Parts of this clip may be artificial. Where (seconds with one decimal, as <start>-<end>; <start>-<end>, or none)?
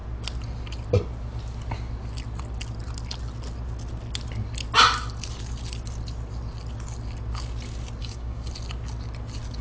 8.0-8.5